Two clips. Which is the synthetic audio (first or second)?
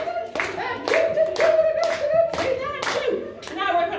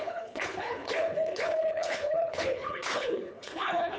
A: second